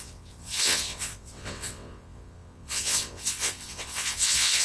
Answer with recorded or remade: remade